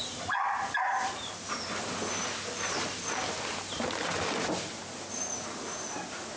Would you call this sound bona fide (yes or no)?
yes